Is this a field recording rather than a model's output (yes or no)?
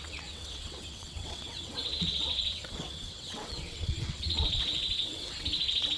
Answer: no